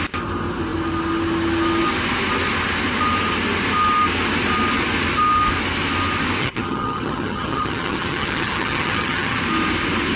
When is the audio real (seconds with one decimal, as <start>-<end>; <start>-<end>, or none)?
0.0-6.4; 9.4-10.2